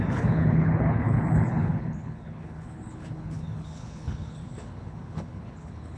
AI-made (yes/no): yes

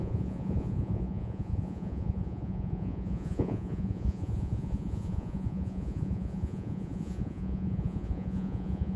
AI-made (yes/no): yes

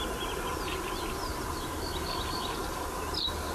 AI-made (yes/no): no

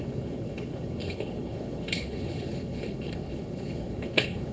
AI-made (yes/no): yes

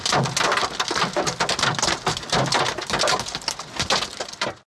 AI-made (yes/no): no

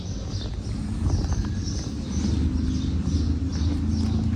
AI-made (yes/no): no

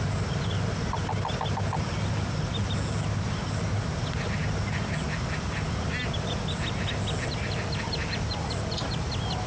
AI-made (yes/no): no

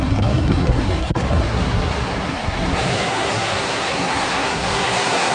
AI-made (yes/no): yes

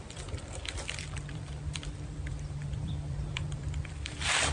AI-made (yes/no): yes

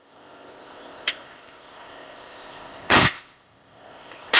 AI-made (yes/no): yes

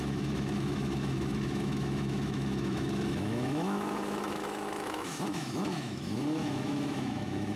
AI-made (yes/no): yes